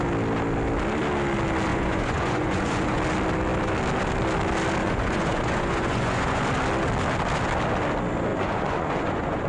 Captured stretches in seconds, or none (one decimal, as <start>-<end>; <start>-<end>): 0.0-1.7; 3.0-4.8; 6.4-8.3